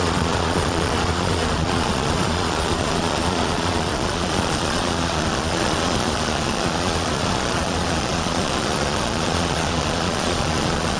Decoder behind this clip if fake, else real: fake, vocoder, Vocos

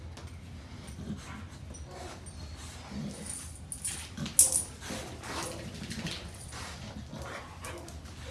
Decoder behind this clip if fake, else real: real